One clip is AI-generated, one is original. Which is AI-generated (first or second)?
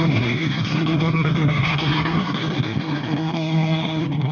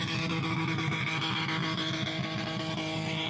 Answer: first